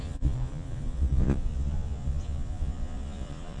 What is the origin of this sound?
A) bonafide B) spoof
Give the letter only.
B